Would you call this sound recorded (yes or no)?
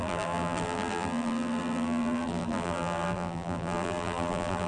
no